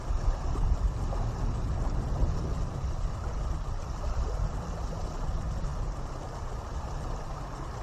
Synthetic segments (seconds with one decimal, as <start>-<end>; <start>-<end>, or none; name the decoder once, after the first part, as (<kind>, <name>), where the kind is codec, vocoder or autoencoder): none